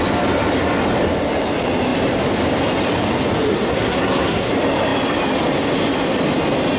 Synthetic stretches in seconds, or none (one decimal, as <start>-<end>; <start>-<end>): 3.5-4.5